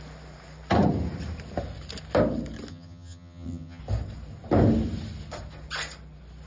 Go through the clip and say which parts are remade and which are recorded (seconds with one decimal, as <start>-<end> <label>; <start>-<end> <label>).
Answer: 0.0-2.7 recorded; 2.7-3.8 remade; 3.8-6.5 recorded